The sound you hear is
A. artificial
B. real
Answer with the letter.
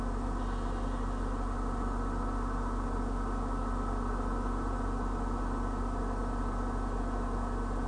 B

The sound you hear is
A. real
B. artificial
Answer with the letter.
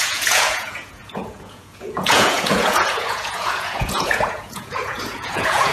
B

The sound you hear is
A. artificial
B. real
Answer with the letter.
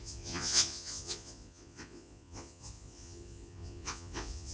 A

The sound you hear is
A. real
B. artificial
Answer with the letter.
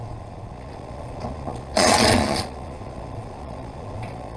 B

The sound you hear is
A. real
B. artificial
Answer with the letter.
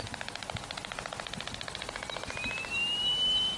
A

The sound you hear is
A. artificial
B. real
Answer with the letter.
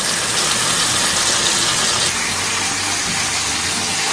B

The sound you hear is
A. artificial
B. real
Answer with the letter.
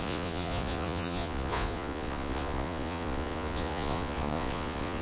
A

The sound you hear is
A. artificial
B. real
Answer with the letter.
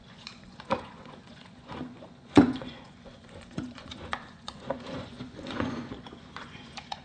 A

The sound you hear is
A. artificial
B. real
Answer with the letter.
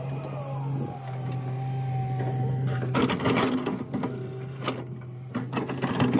B